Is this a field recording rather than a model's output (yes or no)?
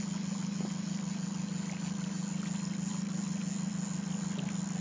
yes